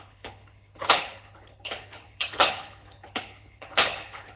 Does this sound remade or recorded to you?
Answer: remade